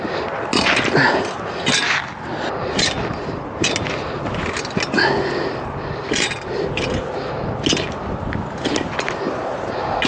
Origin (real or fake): real